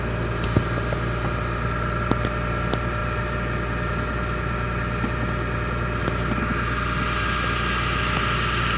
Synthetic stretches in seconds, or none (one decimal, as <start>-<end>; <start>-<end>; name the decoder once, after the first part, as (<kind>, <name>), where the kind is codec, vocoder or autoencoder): none